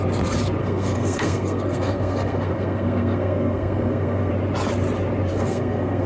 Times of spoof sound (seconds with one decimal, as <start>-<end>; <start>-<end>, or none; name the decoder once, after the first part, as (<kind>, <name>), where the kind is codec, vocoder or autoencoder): 0.6-4.3 (codec, SNAC); 5.3-6.1